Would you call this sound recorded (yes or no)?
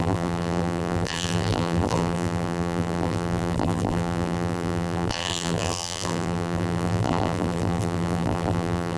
no